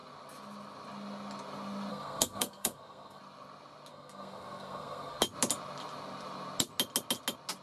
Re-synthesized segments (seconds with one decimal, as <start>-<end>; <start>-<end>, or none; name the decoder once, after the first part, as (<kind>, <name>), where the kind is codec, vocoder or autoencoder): 1.9-3.2 (codec, SNAC); 3.9-5.2